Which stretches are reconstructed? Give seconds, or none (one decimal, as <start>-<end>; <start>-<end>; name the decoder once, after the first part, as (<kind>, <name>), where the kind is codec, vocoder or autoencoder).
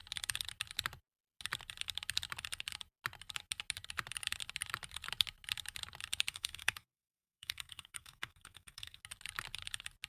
6.3-9.0 (codec, SNAC)